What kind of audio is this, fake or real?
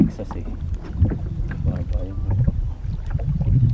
real